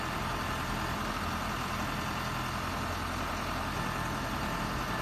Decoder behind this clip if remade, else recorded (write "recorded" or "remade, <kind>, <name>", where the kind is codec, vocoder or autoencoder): recorded